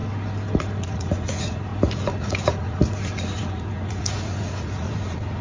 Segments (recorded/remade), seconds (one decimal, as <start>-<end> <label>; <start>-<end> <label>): 0.0-0.6 recorded; 0.6-5.4 remade